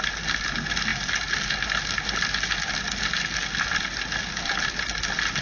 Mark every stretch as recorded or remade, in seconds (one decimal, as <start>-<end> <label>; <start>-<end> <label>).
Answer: 0.0-5.4 recorded